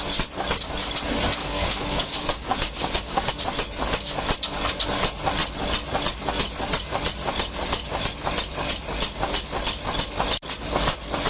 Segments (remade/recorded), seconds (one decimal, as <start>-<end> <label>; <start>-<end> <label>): 0.0-1.4 recorded; 1.4-3.3 remade; 3.3-11.3 recorded